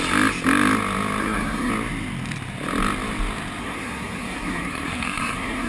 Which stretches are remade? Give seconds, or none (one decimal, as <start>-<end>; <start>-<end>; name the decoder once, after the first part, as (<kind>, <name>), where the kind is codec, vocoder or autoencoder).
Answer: 1.2-1.7 (codec, SNAC); 3.6-5.7